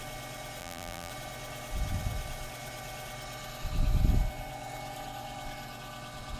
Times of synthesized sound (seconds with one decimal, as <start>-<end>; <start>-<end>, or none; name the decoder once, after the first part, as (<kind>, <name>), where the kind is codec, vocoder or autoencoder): 0.6-1.1 (vocoder, BigVGAN v2)